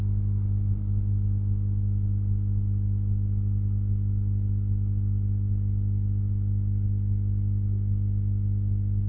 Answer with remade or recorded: recorded